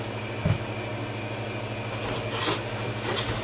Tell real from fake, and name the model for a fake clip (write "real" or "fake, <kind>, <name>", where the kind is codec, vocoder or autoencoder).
real